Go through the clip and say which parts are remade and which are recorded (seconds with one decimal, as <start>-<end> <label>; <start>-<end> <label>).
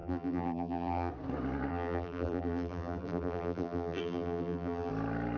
0.0-1.1 remade; 1.1-1.7 recorded; 1.7-4.9 remade; 4.9-5.4 recorded